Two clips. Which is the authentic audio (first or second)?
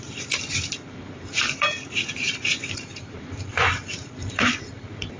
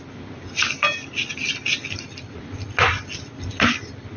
second